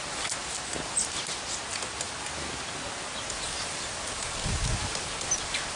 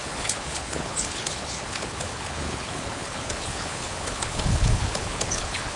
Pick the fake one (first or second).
second